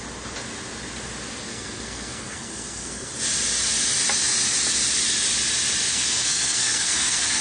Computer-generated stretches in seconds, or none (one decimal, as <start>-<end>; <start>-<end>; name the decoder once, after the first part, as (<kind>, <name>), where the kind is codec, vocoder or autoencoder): 1.5-3.1 (codec, SNAC); 5.9-7.4